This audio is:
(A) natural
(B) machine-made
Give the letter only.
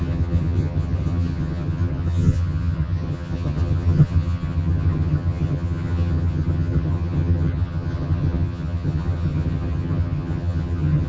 B